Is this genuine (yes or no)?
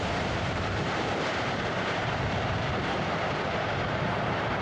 no